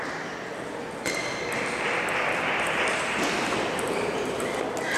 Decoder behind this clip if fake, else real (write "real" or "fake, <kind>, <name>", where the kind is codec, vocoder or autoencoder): real